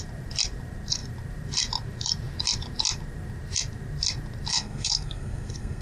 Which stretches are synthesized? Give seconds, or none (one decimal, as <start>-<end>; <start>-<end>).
4.5-5.8